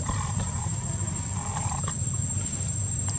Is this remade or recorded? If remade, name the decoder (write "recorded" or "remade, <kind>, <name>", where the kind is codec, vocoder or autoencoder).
recorded